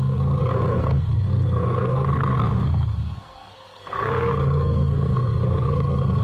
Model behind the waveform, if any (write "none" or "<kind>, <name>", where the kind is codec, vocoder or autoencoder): codec, SNAC